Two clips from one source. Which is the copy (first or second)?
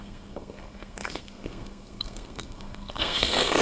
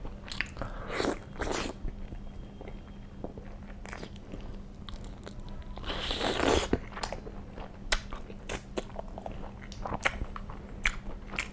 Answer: first